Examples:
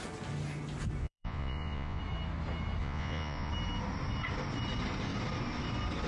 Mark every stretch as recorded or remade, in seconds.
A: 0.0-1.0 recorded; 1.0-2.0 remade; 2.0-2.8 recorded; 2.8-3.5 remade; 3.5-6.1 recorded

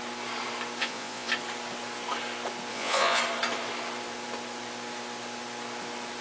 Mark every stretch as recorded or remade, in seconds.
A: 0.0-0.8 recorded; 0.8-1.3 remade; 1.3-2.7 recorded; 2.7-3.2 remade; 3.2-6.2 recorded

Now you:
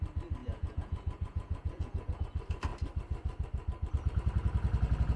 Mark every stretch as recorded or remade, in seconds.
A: 0.0-0.4 recorded; 0.4-2.2 remade; 2.2-5.2 recorded